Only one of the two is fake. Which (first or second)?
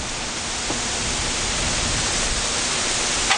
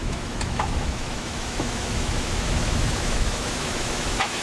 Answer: second